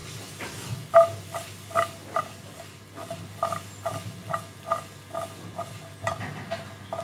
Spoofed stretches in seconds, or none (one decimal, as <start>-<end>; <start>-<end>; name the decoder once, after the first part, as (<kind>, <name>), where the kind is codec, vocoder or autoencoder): none